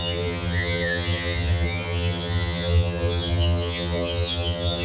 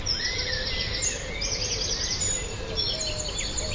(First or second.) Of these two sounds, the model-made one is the first